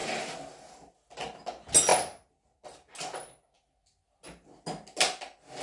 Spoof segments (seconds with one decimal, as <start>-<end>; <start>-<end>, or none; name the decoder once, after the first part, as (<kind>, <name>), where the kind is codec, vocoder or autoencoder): 0.0-1.1 (vocoder, BigVGAN v2)